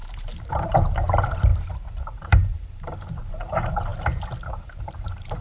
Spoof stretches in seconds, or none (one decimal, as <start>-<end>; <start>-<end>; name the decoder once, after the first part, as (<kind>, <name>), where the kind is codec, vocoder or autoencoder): 0.0-3.9 (vocoder, BigVGAN v2); 4.9-5.4